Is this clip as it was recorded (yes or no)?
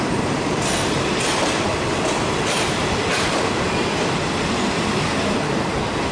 no